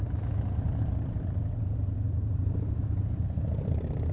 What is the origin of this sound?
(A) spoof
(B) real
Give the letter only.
A